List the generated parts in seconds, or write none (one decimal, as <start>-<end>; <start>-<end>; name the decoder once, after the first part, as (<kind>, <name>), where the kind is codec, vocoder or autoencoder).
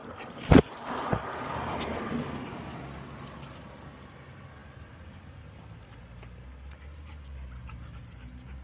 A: none